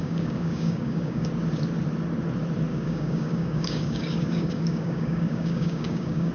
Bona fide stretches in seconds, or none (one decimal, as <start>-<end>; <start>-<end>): 1.3-2.7